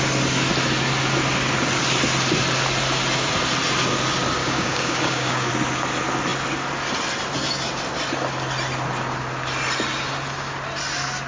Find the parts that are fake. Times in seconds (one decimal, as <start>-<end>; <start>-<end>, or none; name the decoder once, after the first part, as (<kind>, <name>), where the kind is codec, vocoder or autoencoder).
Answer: 4.4-5.5 (codec, DAC)